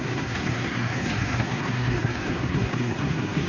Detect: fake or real fake